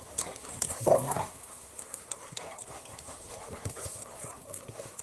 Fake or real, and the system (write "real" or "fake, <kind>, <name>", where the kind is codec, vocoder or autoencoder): fake, codec, SNAC